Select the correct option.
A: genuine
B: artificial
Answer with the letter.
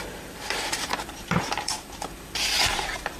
B